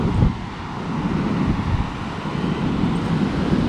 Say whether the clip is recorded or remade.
recorded